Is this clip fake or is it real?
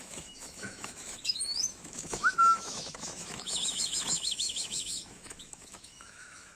fake